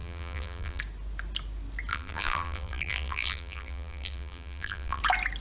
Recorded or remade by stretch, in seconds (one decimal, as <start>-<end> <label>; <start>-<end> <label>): 0.0-0.8 remade; 0.8-1.9 recorded; 1.9-5.0 remade; 5.0-5.4 recorded